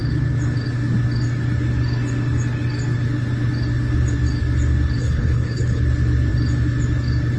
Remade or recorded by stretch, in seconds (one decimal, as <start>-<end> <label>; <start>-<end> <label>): 0.0-5.0 recorded; 5.0-5.8 remade; 5.8-7.4 recorded